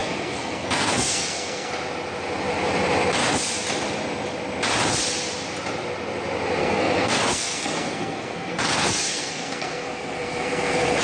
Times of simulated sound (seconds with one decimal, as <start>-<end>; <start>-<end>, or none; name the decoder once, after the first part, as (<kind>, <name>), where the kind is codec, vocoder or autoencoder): 0.0-1.7 (codec, SNAC); 6.6-11.0

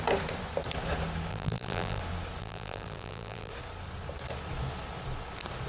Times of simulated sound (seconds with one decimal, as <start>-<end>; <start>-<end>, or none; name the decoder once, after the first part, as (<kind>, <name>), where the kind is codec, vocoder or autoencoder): 1.3-2.0 (vocoder, BigVGAN v2); 2.4-3.5

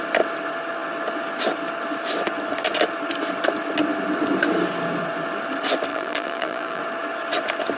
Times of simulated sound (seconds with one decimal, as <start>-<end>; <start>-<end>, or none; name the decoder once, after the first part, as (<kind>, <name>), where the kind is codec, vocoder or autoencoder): 5.9-6.8 (vocoder, BigVGAN v2)

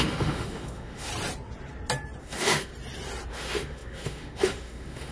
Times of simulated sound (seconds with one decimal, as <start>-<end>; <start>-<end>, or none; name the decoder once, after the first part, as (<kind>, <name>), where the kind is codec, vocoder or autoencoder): 0.0-1.1 (autoencoder, DAC-VAE); 2.2-2.7; 3.3-5.1

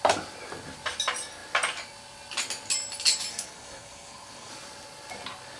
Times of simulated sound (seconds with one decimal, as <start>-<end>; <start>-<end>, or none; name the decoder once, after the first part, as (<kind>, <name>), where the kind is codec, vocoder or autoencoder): 3.3-4.5 (codec, SNAC)

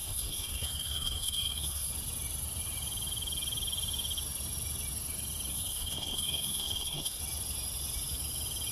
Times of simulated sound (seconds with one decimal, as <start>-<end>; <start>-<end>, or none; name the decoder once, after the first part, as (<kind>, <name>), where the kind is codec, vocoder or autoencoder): 0.0-1.9 (codec, SNAC); 5.5-7.2